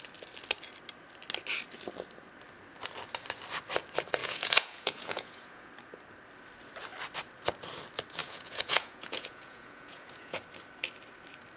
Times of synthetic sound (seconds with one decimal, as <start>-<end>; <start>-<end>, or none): 4.2-5.7; 8.2-10.4